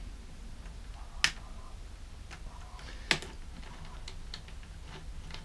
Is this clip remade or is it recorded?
recorded